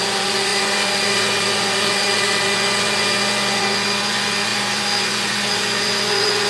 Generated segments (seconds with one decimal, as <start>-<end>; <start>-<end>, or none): 0.0-6.5